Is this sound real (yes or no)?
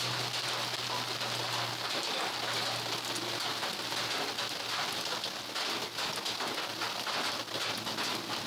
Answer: yes